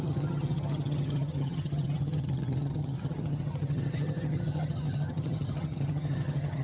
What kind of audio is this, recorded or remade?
remade